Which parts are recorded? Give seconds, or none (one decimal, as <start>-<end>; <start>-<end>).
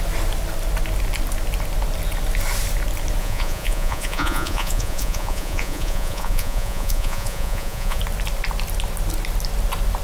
0.0-3.2; 8.0-10.0